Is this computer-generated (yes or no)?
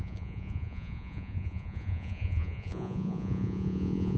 yes